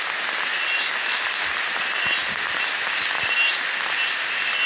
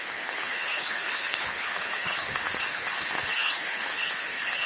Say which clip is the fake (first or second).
second